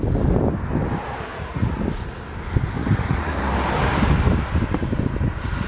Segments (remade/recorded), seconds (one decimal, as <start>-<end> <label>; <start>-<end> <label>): 0.0-1.3 recorded; 1.3-1.8 remade; 1.8-2.8 recorded; 2.8-3.4 remade; 3.4-5.7 recorded